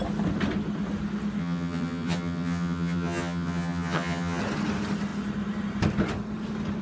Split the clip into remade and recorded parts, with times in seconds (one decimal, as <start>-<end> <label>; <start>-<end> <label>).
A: 0.0-1.4 recorded; 1.4-4.4 remade; 4.4-6.8 recorded